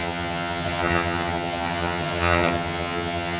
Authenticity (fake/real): fake